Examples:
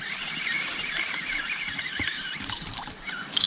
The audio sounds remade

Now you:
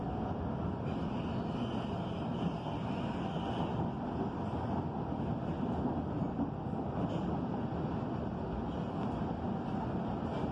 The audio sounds recorded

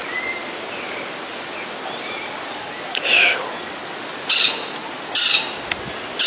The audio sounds recorded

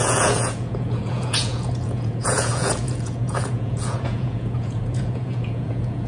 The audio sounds remade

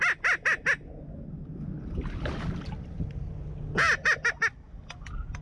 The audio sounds recorded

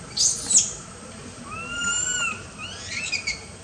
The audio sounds recorded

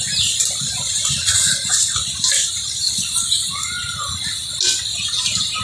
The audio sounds recorded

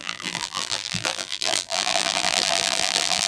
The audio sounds remade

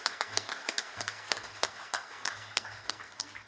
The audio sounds remade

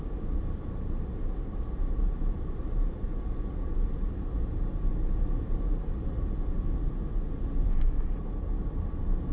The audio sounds recorded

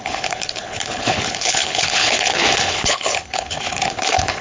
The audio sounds remade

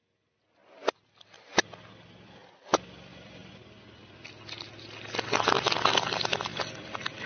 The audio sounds recorded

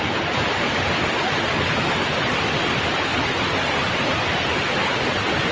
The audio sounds recorded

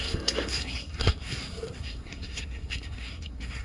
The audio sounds remade